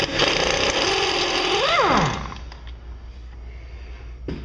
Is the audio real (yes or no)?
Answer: yes